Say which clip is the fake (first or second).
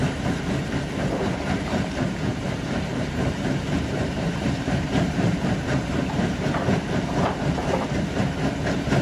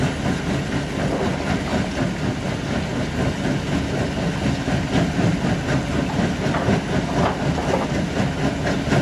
first